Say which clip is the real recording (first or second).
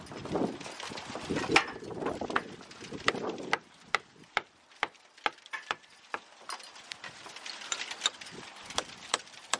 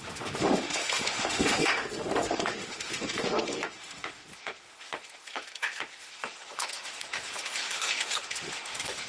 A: first